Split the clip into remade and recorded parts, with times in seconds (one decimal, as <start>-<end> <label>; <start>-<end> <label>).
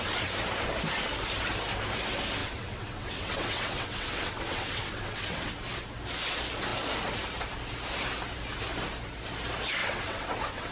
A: 0.0-2.4 recorded; 2.4-5.5 remade; 5.5-9.8 recorded; 9.8-10.7 remade